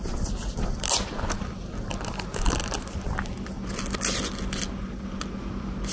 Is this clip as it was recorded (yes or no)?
yes